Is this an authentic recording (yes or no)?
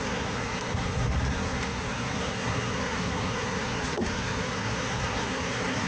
no